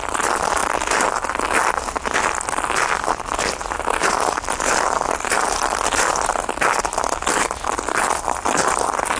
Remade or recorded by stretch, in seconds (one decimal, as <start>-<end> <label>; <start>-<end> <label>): 0.0-9.2 recorded